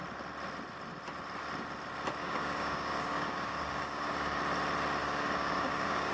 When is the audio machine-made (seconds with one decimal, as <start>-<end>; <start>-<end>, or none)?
2.2-4.4; 5.0-6.1